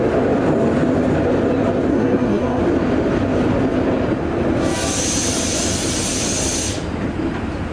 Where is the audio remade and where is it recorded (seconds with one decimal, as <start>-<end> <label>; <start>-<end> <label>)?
0.0-1.9 recorded; 1.9-2.6 remade; 2.6-7.7 recorded